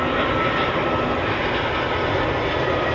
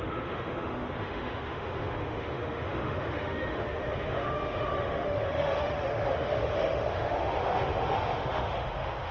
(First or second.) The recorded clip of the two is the first